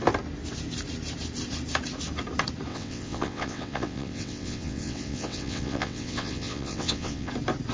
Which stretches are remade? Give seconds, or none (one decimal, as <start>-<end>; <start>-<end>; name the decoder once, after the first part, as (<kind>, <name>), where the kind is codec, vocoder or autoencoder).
2.7-7.3 (vocoder, WaveNeXt)